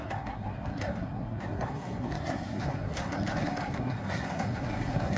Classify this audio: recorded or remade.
remade